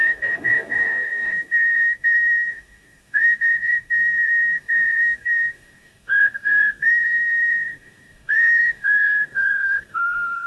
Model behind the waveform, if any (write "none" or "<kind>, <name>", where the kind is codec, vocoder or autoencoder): codec, DAC